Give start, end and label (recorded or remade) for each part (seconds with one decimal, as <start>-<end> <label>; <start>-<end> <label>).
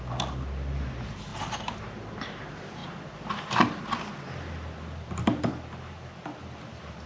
0.0-7.1 recorded